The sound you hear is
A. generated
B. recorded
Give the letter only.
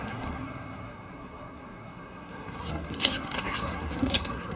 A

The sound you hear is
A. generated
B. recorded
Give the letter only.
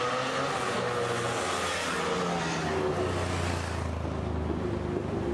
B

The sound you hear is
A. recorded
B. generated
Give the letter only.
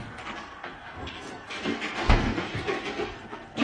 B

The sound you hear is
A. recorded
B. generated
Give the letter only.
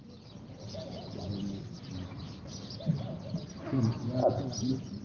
A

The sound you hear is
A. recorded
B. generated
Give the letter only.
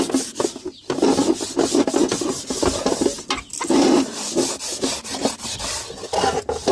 A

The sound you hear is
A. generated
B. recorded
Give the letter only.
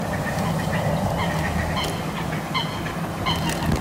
B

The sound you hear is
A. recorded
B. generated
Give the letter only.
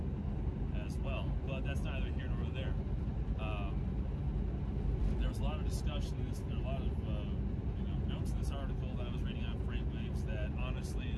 A